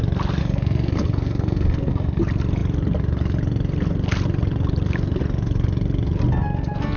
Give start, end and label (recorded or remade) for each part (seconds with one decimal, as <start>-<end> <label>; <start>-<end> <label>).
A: 0.0-0.4 recorded; 0.4-2.2 remade; 2.2-7.0 recorded